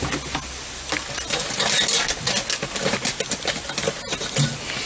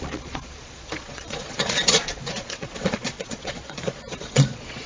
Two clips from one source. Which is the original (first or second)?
first